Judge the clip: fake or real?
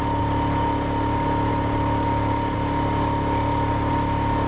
real